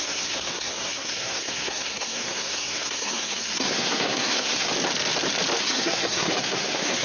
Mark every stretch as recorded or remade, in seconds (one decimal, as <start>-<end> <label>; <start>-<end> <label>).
0.0-4.7 remade; 4.7-5.6 recorded; 5.6-7.0 remade